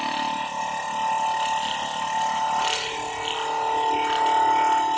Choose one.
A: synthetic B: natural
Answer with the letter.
B